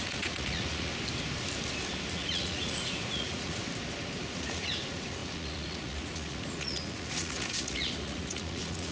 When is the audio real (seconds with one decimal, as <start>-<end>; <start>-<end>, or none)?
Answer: 0.9-2.1; 3.6-4.2